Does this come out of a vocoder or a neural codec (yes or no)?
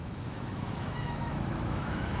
yes